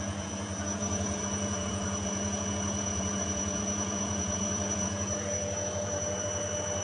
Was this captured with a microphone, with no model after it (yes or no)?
no